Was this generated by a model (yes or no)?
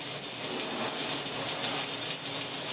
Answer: no